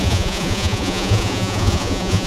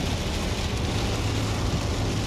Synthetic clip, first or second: first